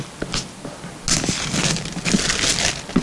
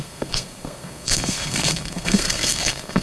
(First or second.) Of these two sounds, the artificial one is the second